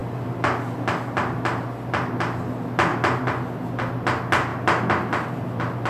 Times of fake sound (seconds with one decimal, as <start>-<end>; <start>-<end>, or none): 0.0-2.5; 4.5-5.3